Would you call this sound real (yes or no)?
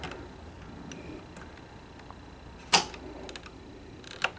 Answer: yes